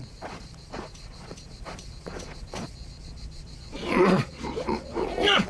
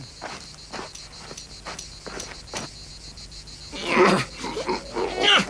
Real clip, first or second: second